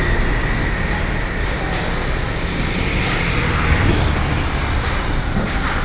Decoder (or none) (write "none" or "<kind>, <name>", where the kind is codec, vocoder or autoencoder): none